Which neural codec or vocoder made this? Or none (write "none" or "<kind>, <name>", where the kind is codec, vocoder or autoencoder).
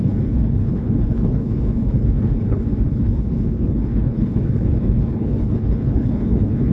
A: codec, HILCodec